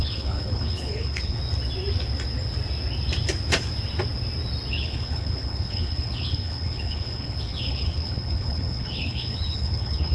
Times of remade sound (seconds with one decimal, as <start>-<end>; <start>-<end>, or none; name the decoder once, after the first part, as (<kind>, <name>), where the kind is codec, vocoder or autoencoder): 0.0-1.4 (codec, HILCodec); 4.7-10.1